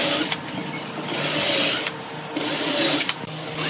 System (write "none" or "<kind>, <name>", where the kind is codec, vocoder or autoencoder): none